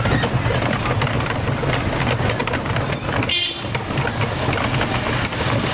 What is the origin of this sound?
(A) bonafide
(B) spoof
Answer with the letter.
A